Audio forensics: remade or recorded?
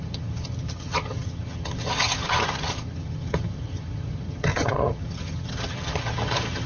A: remade